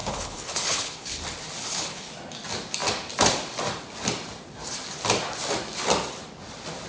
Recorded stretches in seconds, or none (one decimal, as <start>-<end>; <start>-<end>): 1.2-1.6; 2.1-6.9